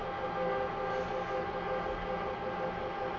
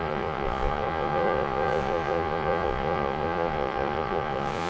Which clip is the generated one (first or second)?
second